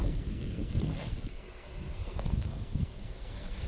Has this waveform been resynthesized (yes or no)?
yes